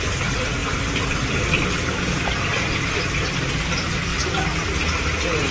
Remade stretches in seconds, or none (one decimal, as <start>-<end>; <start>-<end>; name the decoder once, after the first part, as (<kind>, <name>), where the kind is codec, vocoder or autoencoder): none